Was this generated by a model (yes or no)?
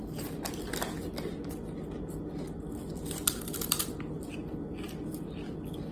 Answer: no